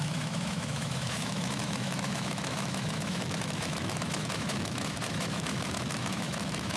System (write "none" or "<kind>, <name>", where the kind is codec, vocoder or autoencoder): autoencoder, DAC-VAE